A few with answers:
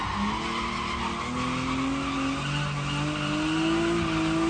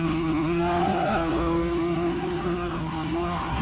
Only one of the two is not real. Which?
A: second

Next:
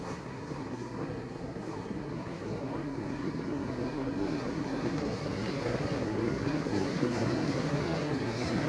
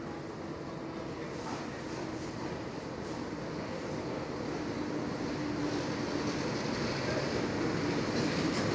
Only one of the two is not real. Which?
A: first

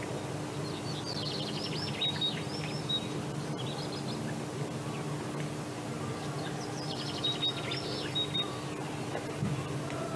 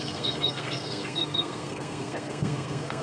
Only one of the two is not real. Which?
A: second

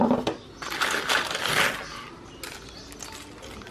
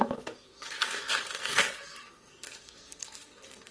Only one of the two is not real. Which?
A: second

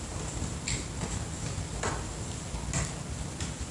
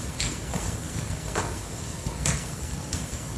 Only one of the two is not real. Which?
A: second